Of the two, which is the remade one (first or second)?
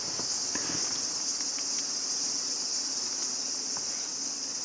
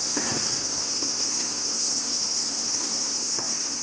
second